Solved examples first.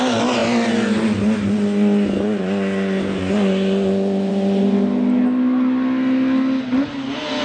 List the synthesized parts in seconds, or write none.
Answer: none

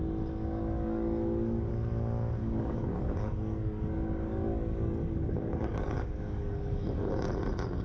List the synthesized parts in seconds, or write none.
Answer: 0.6-1.7 (codec, DAC); 2.4-7.1

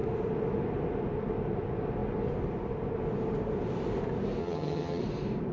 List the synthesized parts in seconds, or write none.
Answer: 4.4-5.0 (vocoder, HiFi-GAN)

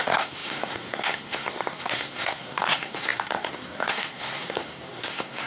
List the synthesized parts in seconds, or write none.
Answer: 0.0-5.5 (codec, SNAC)

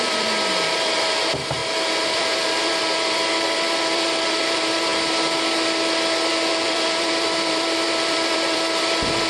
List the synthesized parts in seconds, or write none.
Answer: 0.0-1.6 (vocoder, BigVGAN v2); 2.1-4.9; 6.5-9.3

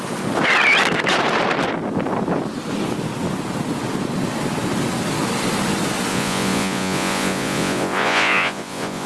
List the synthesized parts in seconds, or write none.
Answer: 6.1-9.1 (vocoder, Vocos)